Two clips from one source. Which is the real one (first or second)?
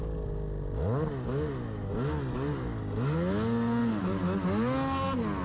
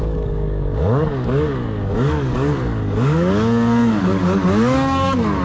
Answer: first